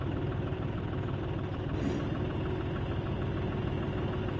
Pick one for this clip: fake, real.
real